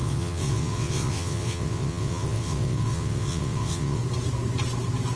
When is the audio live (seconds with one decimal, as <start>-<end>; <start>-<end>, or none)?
4.0-5.2